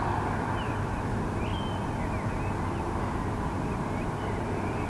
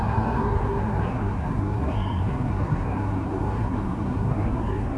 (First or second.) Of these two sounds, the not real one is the second